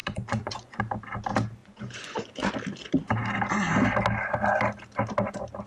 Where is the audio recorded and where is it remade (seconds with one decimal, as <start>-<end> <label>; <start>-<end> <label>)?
0.0-0.8 remade; 0.8-1.6 recorded; 1.6-2.5 remade; 2.5-5.7 recorded